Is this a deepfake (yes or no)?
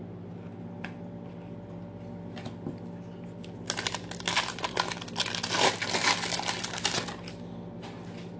no